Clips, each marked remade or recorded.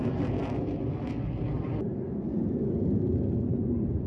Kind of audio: recorded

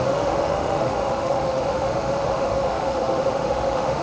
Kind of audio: remade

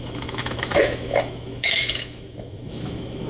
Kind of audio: remade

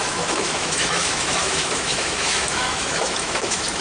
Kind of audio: remade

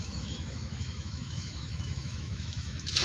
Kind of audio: remade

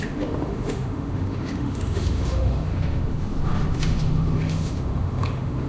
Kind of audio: remade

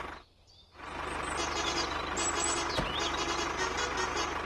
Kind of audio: recorded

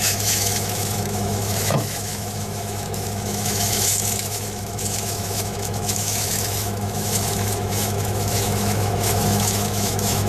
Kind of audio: remade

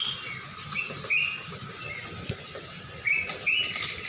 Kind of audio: recorded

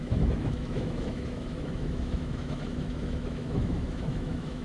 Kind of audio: remade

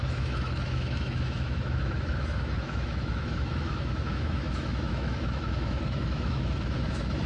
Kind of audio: remade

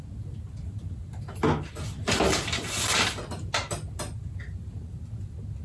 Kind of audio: recorded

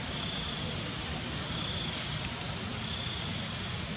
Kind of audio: recorded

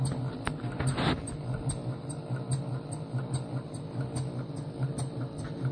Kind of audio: recorded